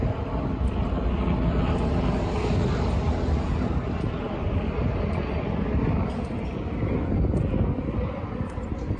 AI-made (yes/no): no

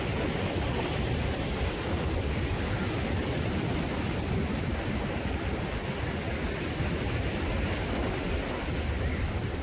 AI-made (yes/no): no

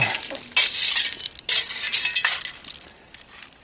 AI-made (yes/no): no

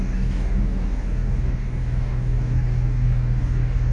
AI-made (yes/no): yes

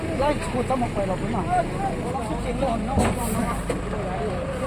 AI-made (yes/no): no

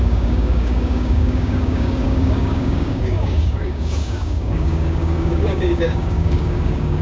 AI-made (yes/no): yes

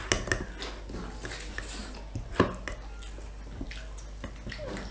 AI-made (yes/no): no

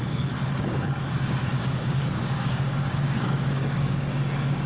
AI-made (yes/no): yes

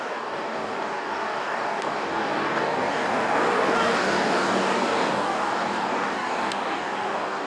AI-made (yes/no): yes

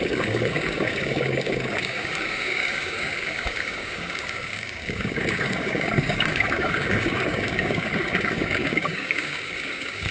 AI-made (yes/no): yes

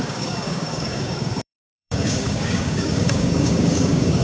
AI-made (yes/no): yes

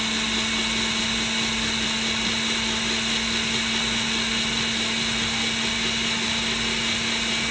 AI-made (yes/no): no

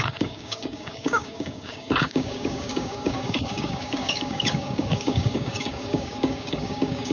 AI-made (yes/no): yes